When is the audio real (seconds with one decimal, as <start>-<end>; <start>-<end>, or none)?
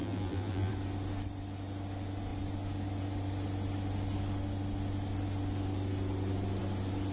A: 0.7-7.1